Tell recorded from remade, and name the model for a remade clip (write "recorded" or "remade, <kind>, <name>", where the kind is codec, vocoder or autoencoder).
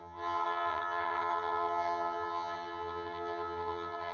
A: remade, vocoder, HiFi-GAN